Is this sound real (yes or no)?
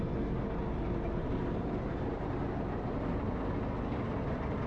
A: yes